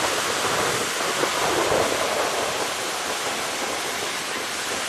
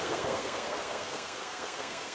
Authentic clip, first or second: first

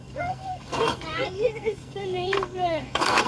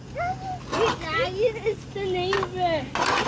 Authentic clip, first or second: second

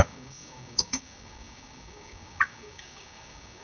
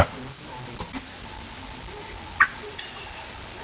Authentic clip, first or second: second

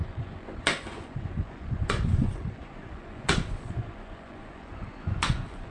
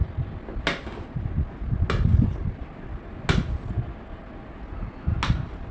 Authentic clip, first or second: second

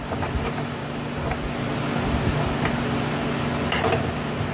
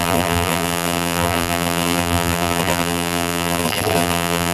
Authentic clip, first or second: first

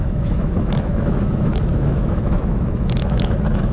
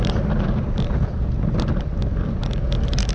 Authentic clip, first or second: second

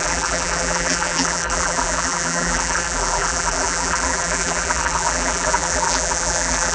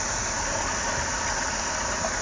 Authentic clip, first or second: second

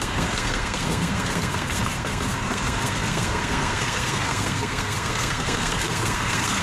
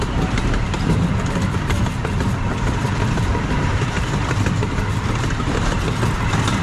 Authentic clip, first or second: second